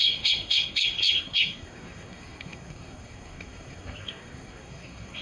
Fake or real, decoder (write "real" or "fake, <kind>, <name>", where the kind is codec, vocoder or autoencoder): fake, codec, SNAC